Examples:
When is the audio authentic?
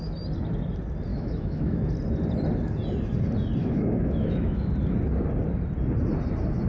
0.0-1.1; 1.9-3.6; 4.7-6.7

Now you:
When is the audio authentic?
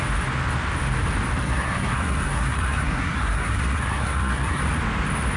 0.0-1.4; 4.6-5.4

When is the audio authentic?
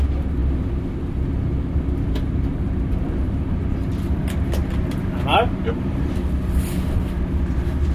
0.0-5.3; 6.1-7.9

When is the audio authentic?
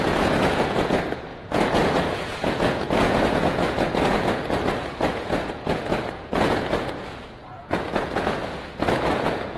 8.4-8.9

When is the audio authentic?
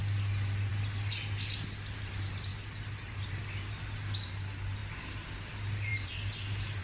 0.0-6.8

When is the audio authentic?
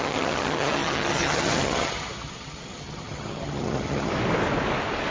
4.1-5.1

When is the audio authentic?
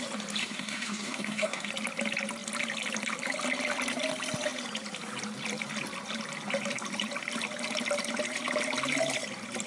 0.0-0.4; 1.7-9.7